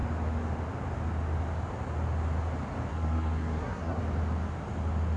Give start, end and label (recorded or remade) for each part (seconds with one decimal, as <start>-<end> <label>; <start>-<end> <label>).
0.0-2.9 recorded; 2.9-4.0 remade; 4.0-5.2 recorded